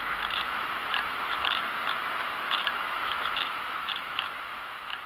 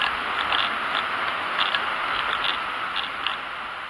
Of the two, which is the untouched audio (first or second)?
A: second